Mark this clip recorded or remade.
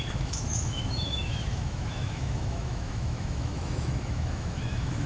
remade